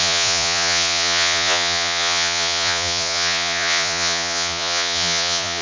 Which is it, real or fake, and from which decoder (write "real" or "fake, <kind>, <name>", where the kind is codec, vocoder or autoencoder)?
fake, vocoder, Vocos